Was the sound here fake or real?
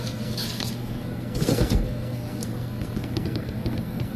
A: fake